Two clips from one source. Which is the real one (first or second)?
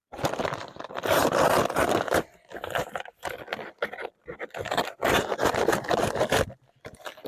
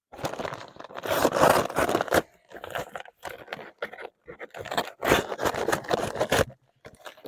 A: second